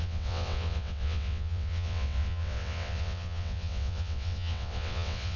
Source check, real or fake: fake